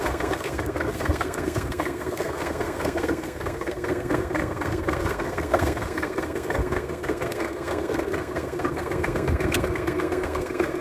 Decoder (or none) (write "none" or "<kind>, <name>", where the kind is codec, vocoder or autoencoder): codec, SNAC